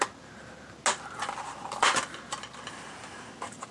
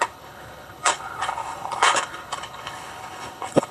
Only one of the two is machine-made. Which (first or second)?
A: second